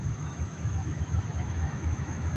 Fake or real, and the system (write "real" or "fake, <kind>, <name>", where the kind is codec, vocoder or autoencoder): fake, autoencoder, DAC-VAE